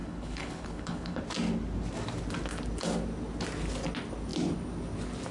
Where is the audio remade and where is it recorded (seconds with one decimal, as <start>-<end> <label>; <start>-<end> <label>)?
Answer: 0.0-1.2 remade; 1.2-5.3 recorded